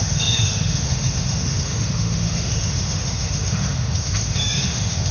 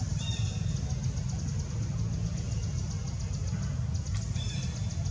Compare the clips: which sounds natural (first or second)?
second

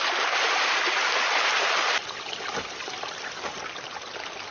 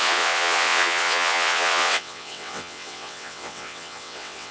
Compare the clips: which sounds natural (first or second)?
first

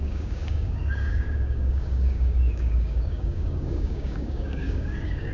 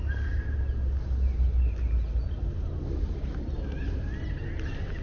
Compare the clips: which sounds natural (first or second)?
second